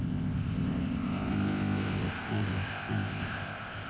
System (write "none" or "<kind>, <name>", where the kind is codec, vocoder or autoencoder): codec, ZipCodec